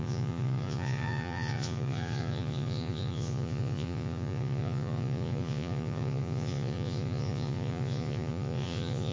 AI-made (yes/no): yes